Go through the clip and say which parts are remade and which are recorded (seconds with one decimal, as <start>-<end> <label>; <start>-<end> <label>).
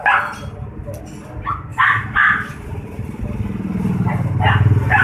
0.0-1.7 recorded; 1.7-4.1 remade; 4.1-5.0 recorded